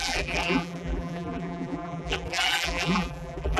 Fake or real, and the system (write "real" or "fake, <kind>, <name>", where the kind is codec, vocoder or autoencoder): fake, vocoder, BigVGAN v2